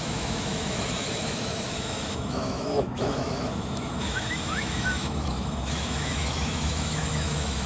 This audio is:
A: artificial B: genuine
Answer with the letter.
A